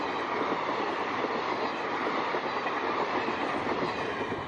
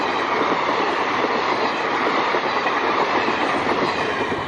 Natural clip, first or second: first